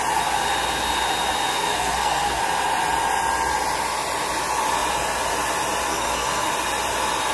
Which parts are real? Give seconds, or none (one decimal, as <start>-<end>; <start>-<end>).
0.0-1.5; 2.4-5.9; 6.5-7.3